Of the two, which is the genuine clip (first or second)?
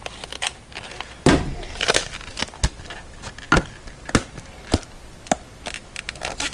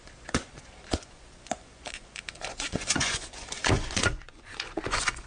first